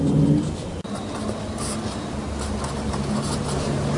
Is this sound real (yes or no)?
yes